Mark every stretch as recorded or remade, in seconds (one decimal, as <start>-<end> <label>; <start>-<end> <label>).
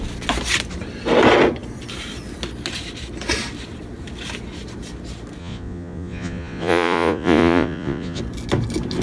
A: 0.0-5.4 recorded; 5.4-8.2 remade; 8.2-9.0 recorded